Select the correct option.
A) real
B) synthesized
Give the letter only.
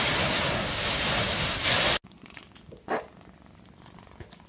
A